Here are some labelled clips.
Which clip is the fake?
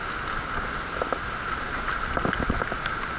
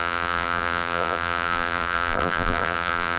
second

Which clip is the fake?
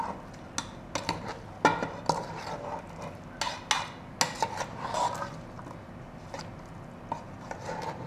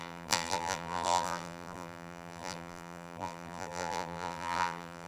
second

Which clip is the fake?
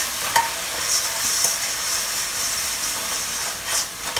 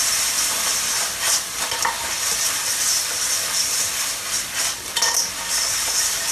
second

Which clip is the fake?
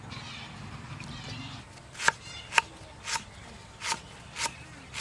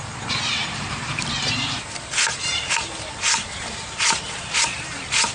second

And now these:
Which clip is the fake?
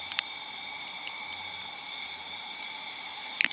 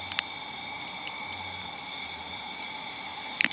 first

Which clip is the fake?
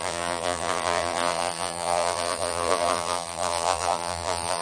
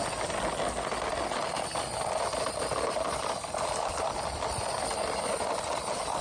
first